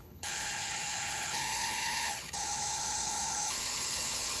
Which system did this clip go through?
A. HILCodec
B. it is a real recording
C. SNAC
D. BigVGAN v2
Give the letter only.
A